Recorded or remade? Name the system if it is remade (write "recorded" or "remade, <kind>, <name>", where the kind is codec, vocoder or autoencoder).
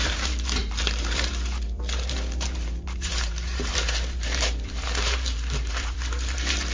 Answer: remade, vocoder, BigVGAN v2